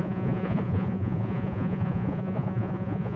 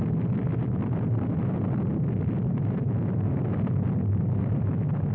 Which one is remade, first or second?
first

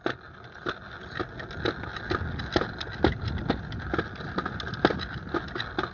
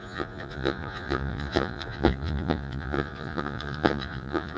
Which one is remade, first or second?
second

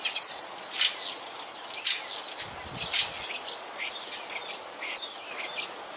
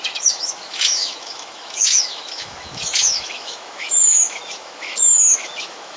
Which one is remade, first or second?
second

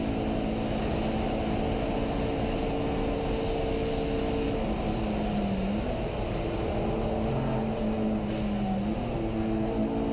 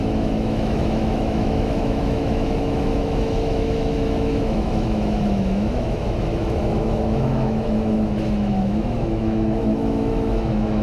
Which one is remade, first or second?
second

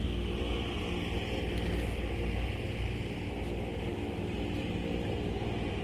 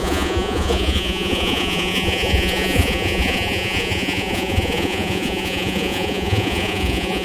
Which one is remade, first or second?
second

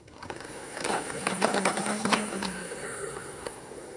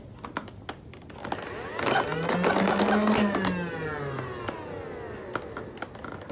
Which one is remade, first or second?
first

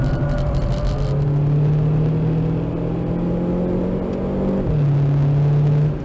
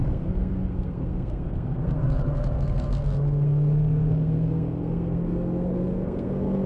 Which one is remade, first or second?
second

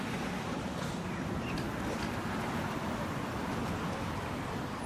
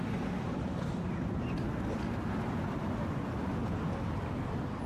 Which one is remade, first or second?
first